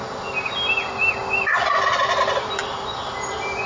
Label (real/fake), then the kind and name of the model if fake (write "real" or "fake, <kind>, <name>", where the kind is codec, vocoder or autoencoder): real